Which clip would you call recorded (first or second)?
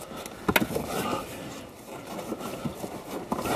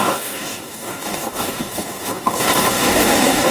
first